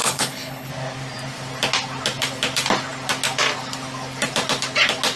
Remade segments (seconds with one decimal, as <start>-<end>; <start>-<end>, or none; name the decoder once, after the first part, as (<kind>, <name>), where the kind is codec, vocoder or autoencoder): 0.0-0.7 (codec, HILCodec)